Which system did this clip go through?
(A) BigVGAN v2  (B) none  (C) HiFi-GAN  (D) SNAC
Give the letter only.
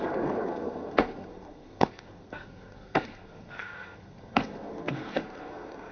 D